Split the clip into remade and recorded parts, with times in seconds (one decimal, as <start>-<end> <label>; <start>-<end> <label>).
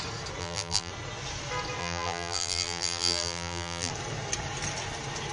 0.0-0.4 recorded; 0.4-0.9 remade; 0.9-1.8 recorded; 1.8-3.9 remade; 3.9-5.3 recorded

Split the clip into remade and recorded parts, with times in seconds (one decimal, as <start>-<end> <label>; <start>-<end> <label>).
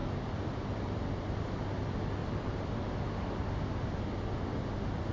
0.0-1.0 remade; 1.0-2.2 recorded; 2.2-2.9 remade; 2.9-5.1 recorded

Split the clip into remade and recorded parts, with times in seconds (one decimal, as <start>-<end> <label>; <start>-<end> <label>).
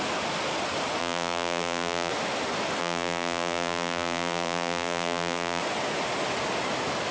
0.0-1.0 recorded; 1.0-2.1 remade; 2.1-2.8 recorded; 2.8-5.6 remade; 5.6-7.1 recorded